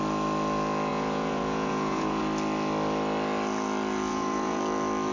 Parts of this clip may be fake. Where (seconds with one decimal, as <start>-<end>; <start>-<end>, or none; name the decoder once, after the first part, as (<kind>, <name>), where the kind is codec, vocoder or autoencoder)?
0.9-2.2 (vocoder, Vocos); 4.1-4.6